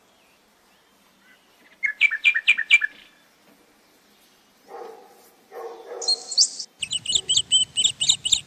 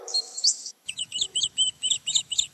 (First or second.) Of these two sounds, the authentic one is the first